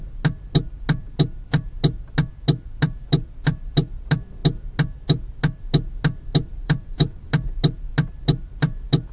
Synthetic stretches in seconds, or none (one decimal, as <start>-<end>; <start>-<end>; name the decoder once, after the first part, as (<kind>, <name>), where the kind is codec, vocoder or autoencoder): 6.6-7.2 (vocoder, BigVGAN v2)